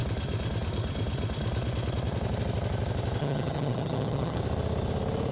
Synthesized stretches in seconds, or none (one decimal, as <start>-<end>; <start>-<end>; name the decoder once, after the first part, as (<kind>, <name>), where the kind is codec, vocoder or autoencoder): 3.2-4.4 (vocoder, HiFi-GAN)

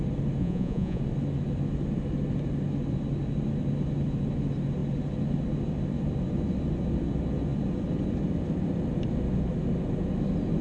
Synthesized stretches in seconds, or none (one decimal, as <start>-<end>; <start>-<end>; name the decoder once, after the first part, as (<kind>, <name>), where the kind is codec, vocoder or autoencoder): 0.4-1.0 (vocoder, Vocos)

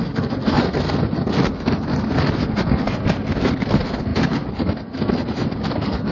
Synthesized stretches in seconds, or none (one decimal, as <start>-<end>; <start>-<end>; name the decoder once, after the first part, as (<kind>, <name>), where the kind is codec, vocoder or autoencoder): 0.0-6.1 (codec, SNAC)

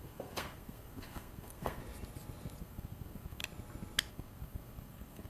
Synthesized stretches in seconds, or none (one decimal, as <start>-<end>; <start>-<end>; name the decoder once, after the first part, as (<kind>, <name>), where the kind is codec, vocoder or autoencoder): 0.0-1.8 (codec, SNAC); 2.6-3.4; 4.1-5.3

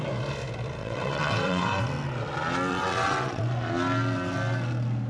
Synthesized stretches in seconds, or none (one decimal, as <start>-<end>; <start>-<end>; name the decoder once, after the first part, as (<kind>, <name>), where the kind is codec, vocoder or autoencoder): 0.8-1.8 (vocoder, WaveNeXt); 2.7-3.4

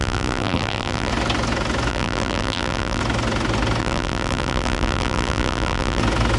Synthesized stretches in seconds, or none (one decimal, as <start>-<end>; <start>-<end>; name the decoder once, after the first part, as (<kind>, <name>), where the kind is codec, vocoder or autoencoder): 0.0-1.1 (vocoder, BigVGAN v2); 1.9-3.0; 3.8-6.0

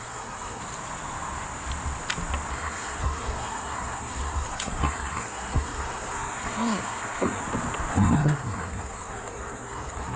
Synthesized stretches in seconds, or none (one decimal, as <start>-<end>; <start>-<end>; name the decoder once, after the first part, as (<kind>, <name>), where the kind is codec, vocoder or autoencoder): 0.0-0.6 (codec, SNAC); 2.5-7.4; 7.9-10.2

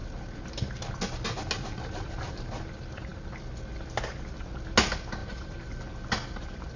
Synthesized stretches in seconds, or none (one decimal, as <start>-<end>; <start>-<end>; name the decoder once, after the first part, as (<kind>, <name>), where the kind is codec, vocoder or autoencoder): 5.2-5.8 (vocoder, BigVGAN v2)